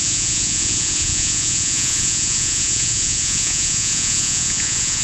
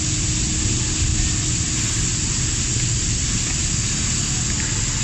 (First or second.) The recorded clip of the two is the second